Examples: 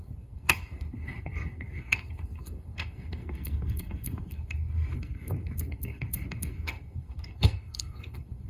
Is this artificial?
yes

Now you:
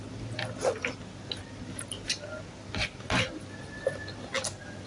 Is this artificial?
no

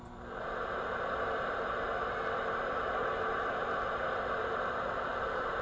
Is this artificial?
no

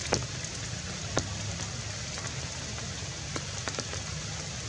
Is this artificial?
no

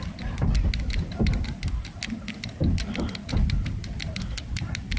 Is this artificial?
no